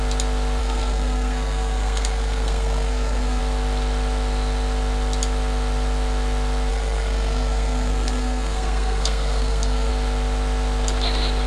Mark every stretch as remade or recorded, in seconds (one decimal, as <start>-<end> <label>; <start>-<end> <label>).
0.0-0.6 recorded; 0.6-3.4 remade; 3.4-6.7 recorded; 6.7-9.9 remade; 9.9-11.5 recorded